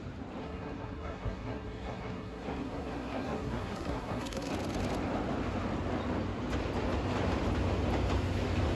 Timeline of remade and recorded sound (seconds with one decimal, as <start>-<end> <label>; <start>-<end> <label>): 0.0-0.4 recorded; 0.4-4.5 remade; 4.5-8.8 recorded